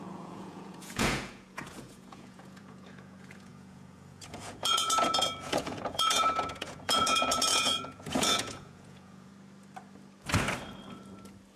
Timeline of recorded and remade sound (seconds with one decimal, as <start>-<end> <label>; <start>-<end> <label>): 0.0-9.3 remade; 9.3-11.6 recorded